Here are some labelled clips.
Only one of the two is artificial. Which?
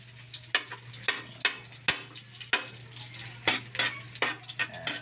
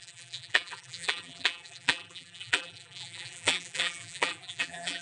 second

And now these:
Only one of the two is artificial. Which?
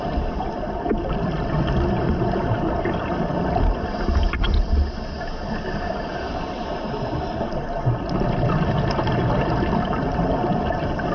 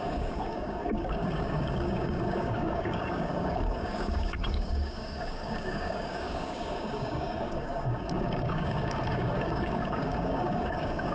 second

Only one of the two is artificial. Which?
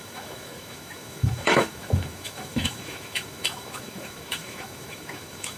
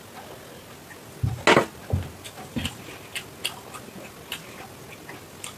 first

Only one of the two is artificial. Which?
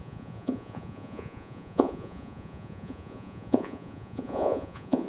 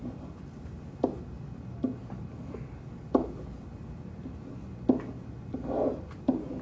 first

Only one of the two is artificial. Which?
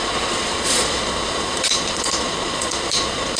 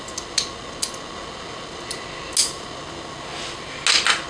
first